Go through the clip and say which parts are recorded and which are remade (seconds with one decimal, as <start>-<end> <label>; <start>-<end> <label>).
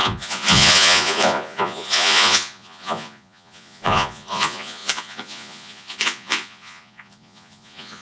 0.0-8.0 remade